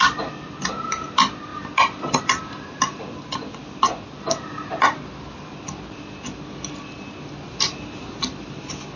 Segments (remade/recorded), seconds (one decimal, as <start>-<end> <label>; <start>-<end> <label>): 0.0-9.0 recorded